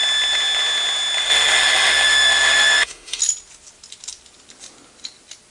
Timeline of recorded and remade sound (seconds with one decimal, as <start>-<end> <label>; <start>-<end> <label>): 0.0-1.2 recorded; 1.2-3.2 remade; 3.2-5.5 recorded